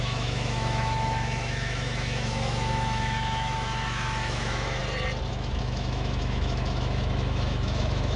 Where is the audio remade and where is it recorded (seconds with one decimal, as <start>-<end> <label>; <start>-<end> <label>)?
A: 0.0-4.8 remade; 4.8-5.3 recorded; 5.3-8.2 remade